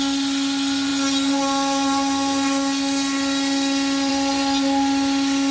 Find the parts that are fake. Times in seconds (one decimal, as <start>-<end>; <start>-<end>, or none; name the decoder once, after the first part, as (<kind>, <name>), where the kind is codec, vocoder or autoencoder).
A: none